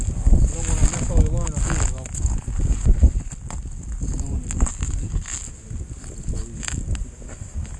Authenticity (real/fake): real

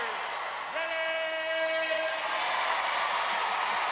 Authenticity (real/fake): real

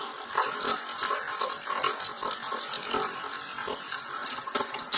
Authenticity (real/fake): real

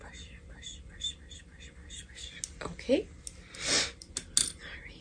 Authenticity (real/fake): real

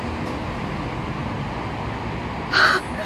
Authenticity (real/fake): real